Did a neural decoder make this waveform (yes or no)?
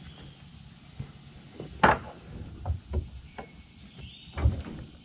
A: no